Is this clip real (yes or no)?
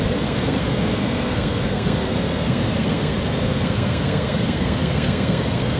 no